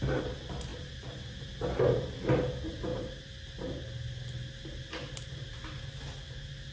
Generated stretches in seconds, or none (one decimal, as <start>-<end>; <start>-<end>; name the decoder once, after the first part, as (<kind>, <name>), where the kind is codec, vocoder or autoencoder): none